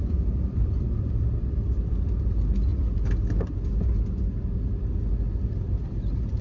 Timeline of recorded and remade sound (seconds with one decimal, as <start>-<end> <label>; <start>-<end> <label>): 0.0-2.7 remade; 2.7-5.5 recorded; 5.5-6.4 remade